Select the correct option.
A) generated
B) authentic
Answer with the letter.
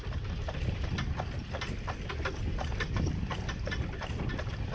B